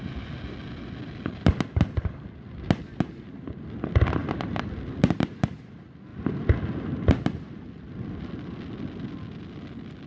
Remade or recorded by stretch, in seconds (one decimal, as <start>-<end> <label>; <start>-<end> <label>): 0.0-10.1 recorded